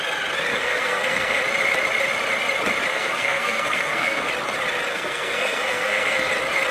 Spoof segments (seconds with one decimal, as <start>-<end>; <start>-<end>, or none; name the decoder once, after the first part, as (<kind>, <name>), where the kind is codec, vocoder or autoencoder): 0.5-1.4 (codec, SNAC); 2.9-4.3; 4.9-6.3